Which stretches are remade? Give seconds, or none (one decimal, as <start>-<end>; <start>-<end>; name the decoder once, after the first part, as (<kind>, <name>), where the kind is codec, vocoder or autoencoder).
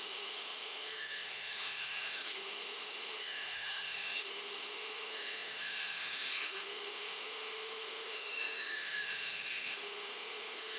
0.0-10.8 (autoencoder, DAC-VAE)